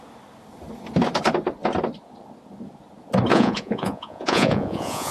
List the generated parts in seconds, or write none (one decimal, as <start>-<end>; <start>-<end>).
3.3-5.1

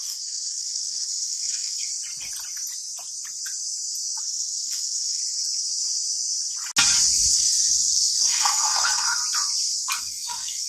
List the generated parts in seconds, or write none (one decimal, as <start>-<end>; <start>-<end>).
0.0-1.9; 4.2-5.2; 7.3-9.2; 10.0-10.7

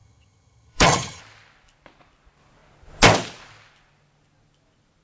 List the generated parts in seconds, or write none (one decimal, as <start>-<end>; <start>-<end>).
0.0-1.2

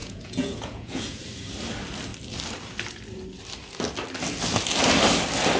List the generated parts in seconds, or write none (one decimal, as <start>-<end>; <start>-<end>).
0.0-1.2

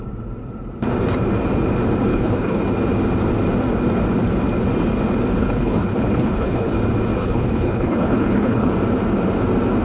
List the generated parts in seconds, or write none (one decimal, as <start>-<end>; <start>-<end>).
2.1-2.6; 5.4-6.7; 7.2-8.7

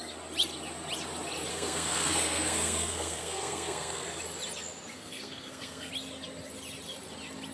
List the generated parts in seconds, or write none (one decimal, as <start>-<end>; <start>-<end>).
1.5-4.2; 4.9-5.9